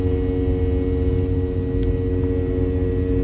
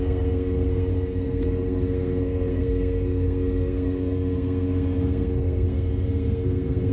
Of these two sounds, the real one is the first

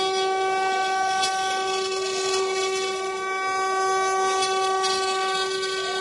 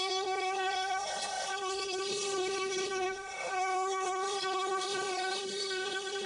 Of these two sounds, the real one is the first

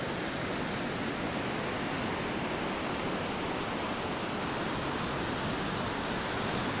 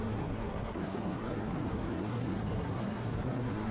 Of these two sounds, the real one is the first